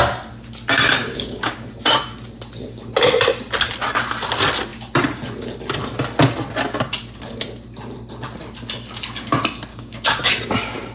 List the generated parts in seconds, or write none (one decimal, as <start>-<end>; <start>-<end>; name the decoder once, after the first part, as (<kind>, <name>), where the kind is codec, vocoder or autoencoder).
1.0-1.7 (codec, DAC); 9.7-10.3